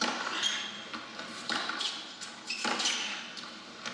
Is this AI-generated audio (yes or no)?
no